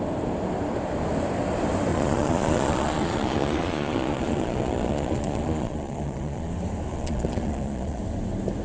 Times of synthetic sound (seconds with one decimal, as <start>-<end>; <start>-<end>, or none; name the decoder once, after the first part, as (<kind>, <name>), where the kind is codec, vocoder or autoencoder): 1.9-6.5 (vocoder, Vocos); 6.9-8.0